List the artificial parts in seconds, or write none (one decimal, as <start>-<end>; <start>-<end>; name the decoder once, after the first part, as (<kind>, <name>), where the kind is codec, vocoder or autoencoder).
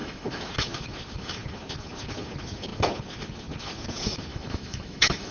0.0-0.5 (autoencoder, DAC-VAE); 4.3-5.3